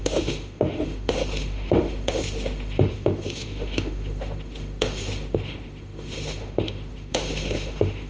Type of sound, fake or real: fake